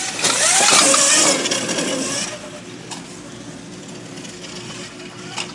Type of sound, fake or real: real